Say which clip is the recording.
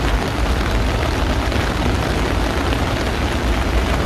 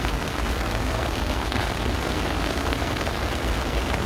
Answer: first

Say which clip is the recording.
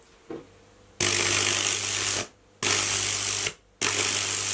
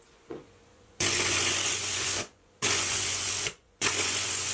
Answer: first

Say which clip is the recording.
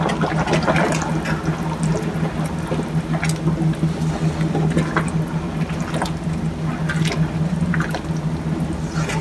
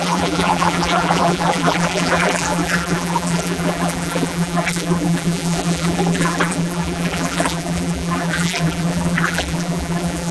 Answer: first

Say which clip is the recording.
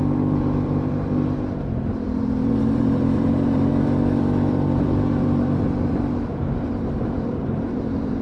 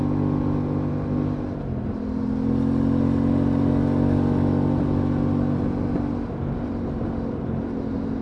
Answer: second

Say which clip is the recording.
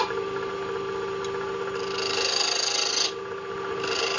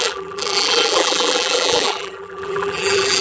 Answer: first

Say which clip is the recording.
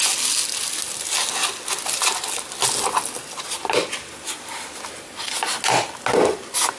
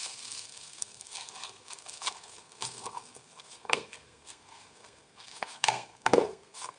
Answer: first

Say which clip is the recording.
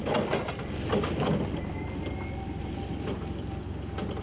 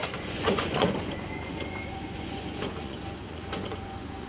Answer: first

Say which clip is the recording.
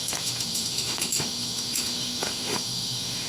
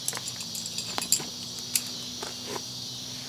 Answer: second